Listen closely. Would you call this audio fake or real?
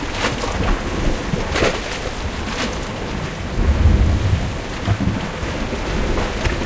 real